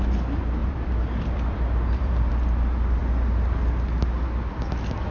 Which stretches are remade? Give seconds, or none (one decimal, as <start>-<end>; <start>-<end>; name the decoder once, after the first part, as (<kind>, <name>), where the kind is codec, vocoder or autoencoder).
0.6-2.3 (vocoder, BigVGAN v2)

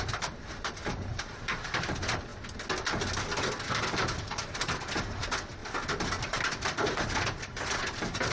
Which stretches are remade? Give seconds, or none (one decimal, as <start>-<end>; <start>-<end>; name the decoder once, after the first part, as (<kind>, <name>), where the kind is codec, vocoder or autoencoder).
0.0-2.3 (vocoder, BigVGAN v2); 3.5-5.6; 6.2-8.3

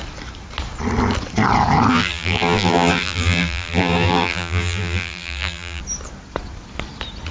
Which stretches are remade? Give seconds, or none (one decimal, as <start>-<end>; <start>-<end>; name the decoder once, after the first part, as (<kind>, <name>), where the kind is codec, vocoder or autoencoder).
1.9-5.8 (vocoder, BigVGAN v2)

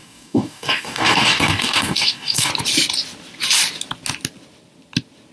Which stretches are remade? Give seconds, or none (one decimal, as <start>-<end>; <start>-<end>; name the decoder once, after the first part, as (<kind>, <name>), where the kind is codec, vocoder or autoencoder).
0.0-2.5 (codec, DAC)